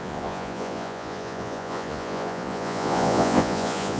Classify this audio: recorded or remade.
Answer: remade